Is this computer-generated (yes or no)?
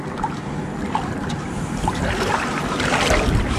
no